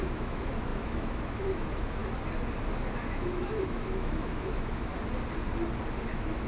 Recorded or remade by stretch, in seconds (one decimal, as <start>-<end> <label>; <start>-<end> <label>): 0.0-2.0 remade; 2.0-3.0 recorded; 3.0-4.9 remade; 4.9-6.1 recorded; 6.1-6.5 remade